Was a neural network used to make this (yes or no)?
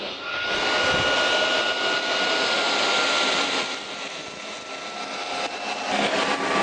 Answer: no